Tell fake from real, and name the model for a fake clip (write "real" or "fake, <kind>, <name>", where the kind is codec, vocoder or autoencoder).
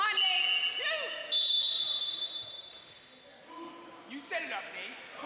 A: real